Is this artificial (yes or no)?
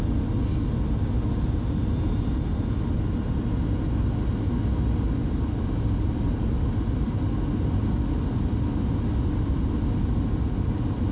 no